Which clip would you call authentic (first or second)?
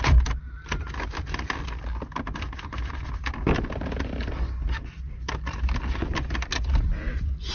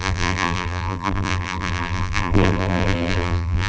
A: first